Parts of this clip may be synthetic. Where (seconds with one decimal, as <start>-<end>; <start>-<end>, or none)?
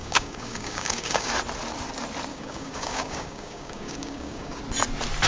0.0-1.3; 2.3-4.6